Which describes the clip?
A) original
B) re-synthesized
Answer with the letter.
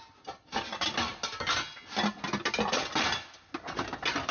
A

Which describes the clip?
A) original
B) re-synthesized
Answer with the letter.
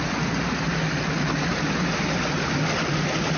A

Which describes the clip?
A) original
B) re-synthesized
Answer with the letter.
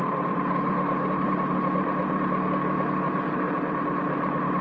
A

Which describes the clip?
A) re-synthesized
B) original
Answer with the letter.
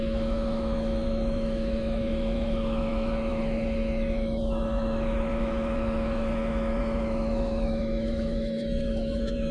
A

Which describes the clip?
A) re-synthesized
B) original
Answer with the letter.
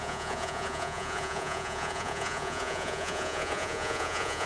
A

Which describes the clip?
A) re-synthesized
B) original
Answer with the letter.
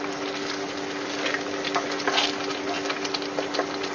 B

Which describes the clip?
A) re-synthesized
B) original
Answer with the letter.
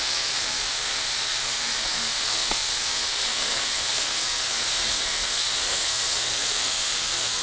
A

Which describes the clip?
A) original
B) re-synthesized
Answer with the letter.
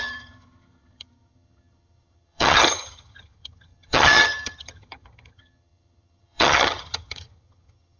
B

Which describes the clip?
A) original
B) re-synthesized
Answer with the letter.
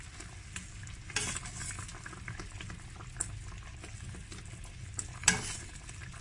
A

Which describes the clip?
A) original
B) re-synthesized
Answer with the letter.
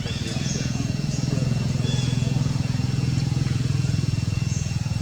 B